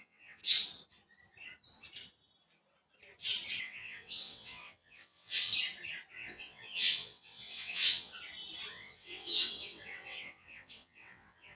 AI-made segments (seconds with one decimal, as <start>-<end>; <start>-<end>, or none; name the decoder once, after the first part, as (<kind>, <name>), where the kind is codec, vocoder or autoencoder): 0.0-0.4 (vocoder, WaveNeXt); 3.6-5.5; 6.1-8.1; 8.7-11.6